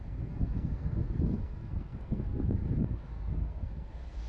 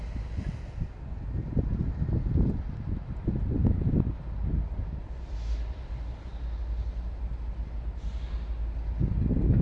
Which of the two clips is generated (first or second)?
first